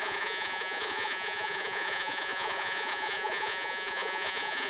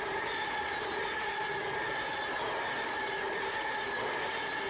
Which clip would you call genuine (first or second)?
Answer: second